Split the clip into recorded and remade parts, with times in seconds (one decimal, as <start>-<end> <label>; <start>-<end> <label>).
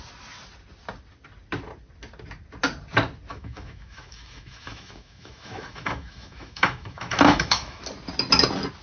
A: 0.0-3.3 recorded; 3.3-7.8 remade; 7.8-8.8 recorded